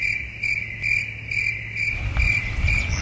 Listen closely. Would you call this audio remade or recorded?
recorded